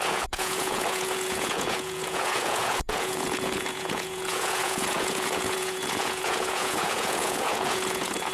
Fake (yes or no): yes